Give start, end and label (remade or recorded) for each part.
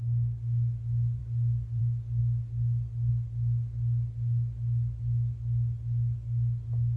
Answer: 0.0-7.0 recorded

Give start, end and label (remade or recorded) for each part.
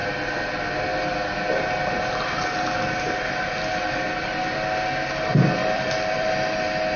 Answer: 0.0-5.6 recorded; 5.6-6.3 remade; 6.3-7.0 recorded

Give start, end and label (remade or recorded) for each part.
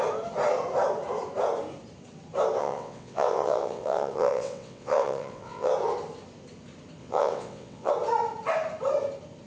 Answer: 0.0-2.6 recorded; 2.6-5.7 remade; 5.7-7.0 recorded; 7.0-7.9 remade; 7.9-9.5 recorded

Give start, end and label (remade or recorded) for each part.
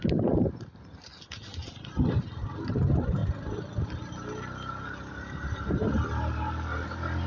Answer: 0.0-1.1 remade; 1.1-2.1 recorded; 2.1-3.2 remade; 3.2-3.8 recorded; 3.8-7.3 remade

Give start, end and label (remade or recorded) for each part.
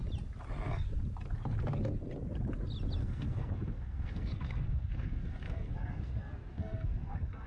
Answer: 0.0-3.0 recorded; 3.0-7.5 remade